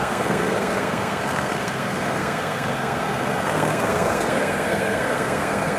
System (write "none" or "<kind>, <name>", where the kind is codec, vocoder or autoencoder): codec, SNAC